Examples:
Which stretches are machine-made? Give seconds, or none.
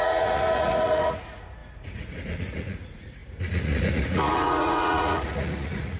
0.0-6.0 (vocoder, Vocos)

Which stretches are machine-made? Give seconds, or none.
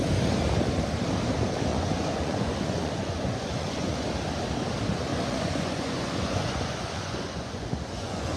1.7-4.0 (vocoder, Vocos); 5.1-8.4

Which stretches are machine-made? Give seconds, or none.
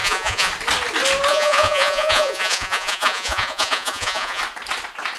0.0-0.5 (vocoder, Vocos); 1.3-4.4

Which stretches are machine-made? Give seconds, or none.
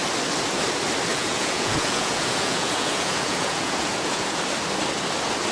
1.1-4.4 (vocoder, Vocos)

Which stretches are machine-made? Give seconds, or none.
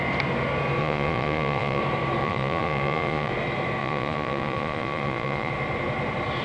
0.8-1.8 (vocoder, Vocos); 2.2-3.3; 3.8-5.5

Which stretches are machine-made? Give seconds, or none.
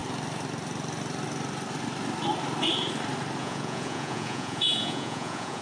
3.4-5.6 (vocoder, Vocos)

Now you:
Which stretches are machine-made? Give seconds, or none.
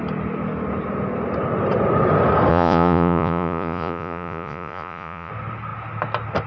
2.5-5.3 (vocoder, Vocos)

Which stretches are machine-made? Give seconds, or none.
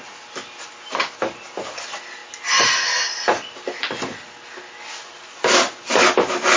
none